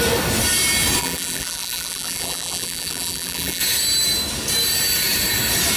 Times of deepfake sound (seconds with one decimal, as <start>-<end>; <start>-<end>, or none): 1.0-3.6